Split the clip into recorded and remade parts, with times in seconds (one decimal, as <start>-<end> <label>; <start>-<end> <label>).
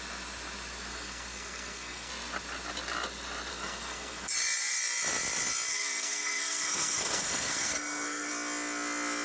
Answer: 0.0-0.9 recorded; 0.9-2.1 remade; 2.1-3.5 recorded; 3.5-4.3 remade; 4.3-5.7 recorded; 5.7-8.3 remade; 8.3-9.2 recorded